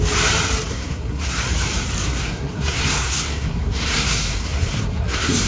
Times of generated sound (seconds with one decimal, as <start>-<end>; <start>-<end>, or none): 0.7-1.4; 2.0-5.5